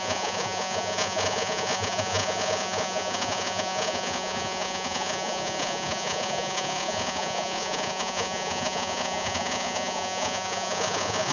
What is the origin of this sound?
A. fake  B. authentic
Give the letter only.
A